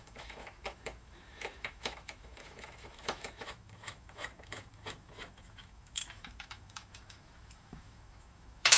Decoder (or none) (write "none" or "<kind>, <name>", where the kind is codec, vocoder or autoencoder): autoencoder, DAC-VAE